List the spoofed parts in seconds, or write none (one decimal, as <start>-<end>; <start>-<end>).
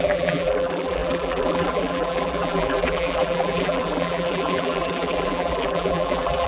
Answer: 0.0-6.5